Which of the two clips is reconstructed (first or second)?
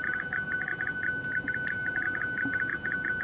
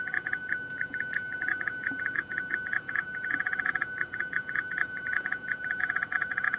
second